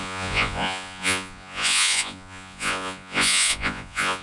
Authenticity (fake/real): fake